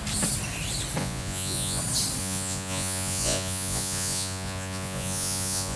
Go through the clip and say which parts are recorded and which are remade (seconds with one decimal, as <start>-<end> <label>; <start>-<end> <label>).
0.0-1.0 recorded; 1.0-1.8 remade; 1.8-2.2 recorded; 2.2-5.8 remade